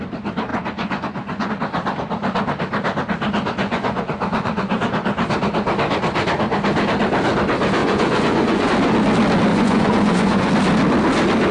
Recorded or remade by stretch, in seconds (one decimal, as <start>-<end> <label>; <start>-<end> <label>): 0.0-0.5 recorded; 0.5-1.5 remade; 1.5-3.6 recorded; 3.6-4.8 remade; 4.8-7.8 recorded; 7.8-8.7 remade; 8.7-9.5 recorded; 9.5-10.5 remade; 10.5-11.5 recorded